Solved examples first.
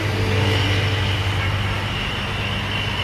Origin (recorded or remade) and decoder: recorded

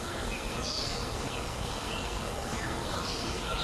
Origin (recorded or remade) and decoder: remade, codec, SNAC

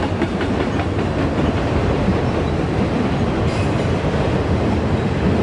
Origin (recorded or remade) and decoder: recorded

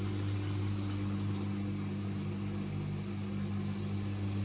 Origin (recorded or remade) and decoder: recorded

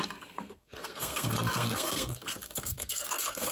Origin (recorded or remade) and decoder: remade, codec, SNAC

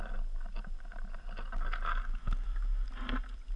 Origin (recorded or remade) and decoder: recorded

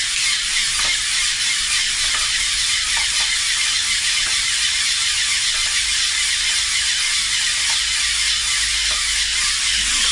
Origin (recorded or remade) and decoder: recorded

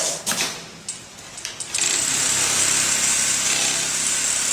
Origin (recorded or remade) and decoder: recorded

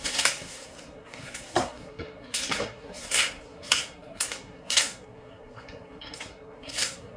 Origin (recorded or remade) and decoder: remade, codec, SNAC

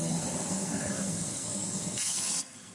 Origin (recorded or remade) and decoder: remade, codec, SNAC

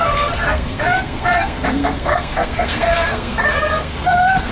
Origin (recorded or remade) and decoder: remade, codec, SNAC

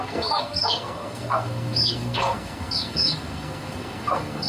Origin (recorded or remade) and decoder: remade, codec, SNAC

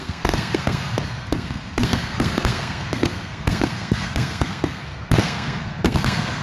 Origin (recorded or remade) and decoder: remade, codec, SNAC